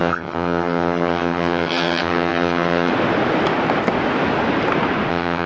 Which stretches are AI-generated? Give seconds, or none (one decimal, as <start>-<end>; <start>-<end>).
0.0-2.9; 5.1-5.5